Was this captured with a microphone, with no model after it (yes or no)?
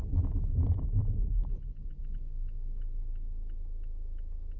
yes